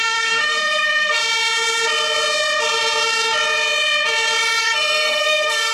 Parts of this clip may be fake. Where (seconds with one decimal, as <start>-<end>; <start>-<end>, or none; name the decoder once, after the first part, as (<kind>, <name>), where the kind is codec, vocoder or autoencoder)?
0.0-1.2 (codec, SNAC); 4.6-5.7